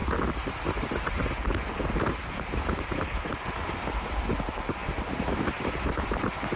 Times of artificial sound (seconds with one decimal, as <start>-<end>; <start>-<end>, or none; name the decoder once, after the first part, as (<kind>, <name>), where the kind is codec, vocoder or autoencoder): none